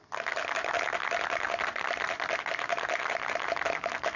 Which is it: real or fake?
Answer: real